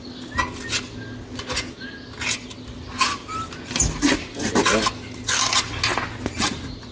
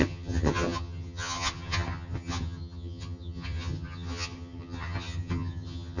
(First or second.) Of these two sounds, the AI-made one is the second